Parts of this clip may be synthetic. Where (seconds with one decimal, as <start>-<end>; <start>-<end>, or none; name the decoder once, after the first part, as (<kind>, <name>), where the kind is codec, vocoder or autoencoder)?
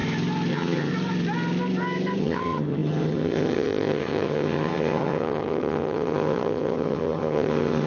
0.5-0.9 (vocoder, HiFi-GAN); 2.2-7.9